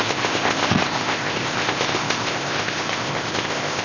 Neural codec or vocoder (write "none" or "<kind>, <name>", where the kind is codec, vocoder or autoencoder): codec, ZipCodec